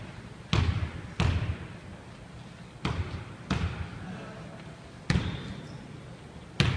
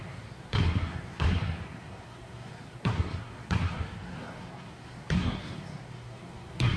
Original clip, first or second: first